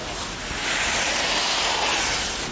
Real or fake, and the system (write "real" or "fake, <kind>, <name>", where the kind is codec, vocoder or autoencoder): real